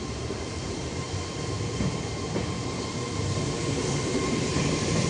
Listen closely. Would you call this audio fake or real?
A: fake